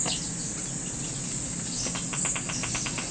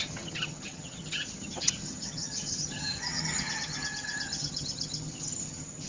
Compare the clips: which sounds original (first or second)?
first